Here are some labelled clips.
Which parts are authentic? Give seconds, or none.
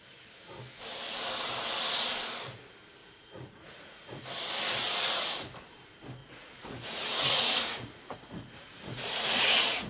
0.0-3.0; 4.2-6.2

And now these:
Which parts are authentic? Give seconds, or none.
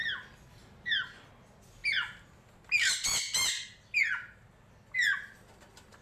0.0-6.0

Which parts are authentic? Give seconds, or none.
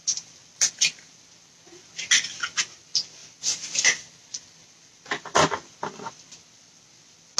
0.0-7.4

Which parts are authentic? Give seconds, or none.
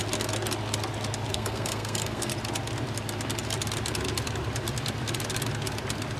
0.0-1.3; 2.3-6.2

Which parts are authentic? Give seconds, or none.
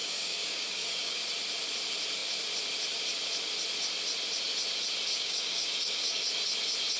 1.2-5.1; 6.2-7.0